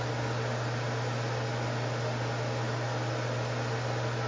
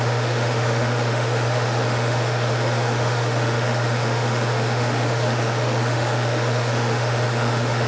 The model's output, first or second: second